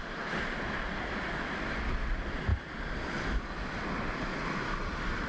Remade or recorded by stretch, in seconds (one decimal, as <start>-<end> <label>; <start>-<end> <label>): 0.0-5.3 recorded